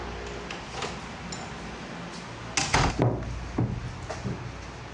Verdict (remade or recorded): recorded